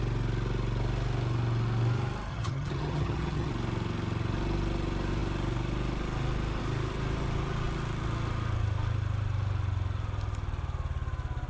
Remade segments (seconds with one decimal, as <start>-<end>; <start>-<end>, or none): 2.3-3.5